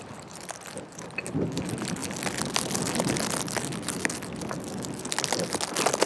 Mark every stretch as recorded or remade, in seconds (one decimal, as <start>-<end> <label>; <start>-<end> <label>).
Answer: 0.0-6.1 recorded